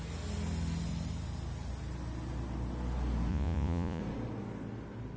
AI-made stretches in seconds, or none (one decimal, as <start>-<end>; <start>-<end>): 3.3-4.0